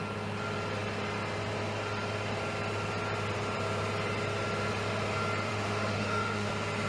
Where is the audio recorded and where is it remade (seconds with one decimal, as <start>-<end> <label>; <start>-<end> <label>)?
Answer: 0.0-5.5 recorded; 5.5-6.5 remade; 6.5-6.9 recorded